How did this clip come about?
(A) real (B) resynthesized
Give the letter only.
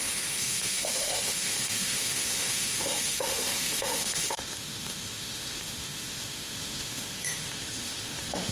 B